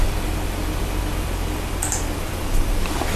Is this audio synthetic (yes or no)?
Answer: yes